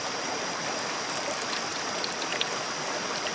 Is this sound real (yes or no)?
yes